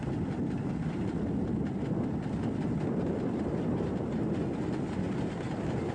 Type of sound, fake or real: real